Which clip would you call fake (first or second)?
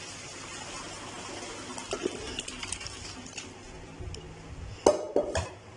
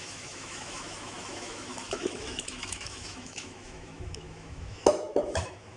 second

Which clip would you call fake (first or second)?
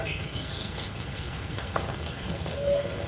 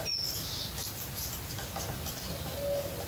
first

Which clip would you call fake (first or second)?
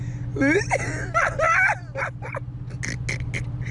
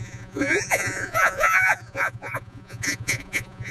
second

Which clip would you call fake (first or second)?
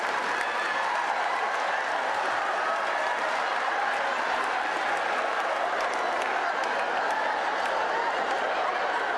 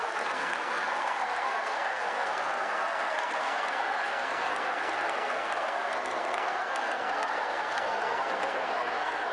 second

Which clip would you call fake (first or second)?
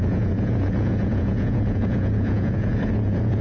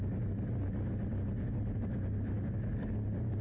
first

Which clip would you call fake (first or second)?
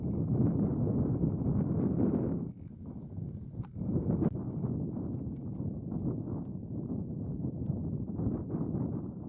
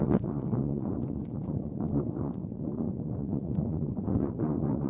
second